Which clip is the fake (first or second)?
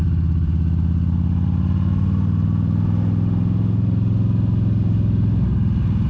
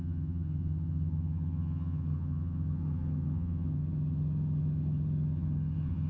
second